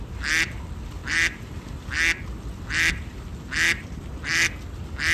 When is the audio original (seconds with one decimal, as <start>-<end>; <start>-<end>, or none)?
0.0-5.1